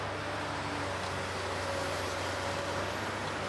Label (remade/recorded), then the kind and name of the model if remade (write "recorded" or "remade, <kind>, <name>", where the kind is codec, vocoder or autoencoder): recorded